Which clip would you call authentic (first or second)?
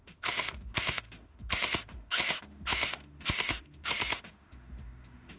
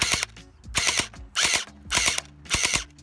second